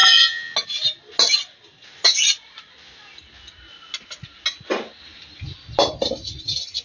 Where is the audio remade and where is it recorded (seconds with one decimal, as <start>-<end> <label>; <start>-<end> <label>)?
0.0-6.8 recorded